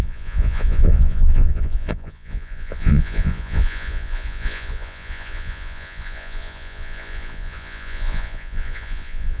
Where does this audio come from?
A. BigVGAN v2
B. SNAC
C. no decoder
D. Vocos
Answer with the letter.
D